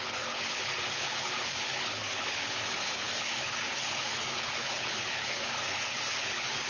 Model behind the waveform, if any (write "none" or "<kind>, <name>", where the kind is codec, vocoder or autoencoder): codec, HILCodec